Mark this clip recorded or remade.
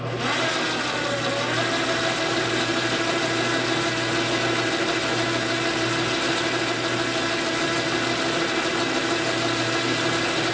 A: recorded